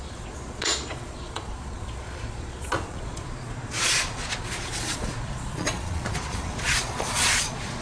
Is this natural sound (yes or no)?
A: no